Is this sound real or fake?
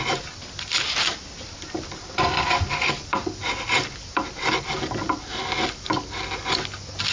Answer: real